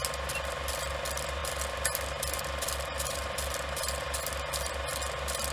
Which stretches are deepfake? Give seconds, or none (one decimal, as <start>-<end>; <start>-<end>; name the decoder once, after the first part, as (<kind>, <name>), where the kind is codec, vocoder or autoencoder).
none